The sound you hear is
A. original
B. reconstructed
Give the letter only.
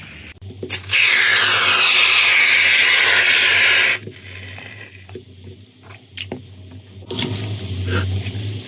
A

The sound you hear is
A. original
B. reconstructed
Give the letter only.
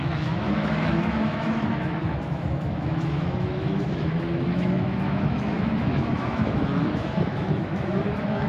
B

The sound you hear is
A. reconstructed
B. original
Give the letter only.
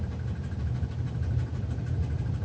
B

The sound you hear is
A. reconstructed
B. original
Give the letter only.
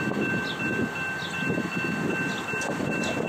B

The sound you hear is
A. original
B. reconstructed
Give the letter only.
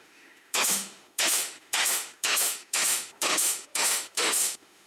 B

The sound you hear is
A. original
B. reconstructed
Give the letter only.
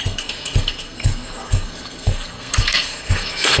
B